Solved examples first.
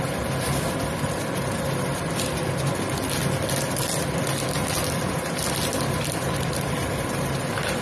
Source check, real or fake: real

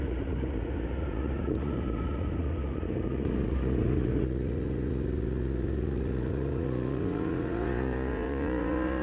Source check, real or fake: fake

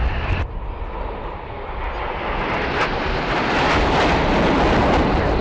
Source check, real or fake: real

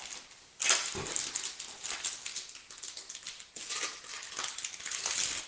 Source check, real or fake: real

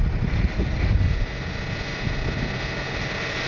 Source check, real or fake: real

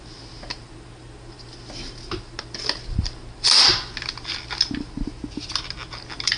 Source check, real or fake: real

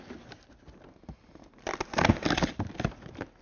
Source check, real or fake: real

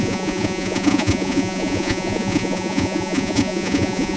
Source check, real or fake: fake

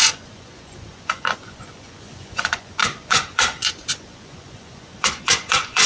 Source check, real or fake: fake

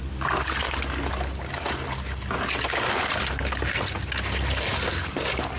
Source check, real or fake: real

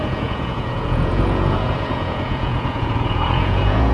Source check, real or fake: fake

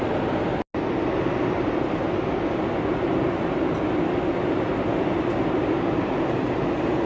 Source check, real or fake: real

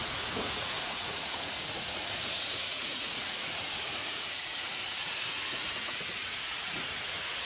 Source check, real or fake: fake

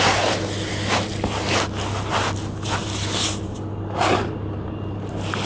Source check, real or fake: real